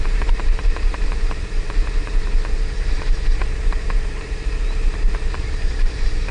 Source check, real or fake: fake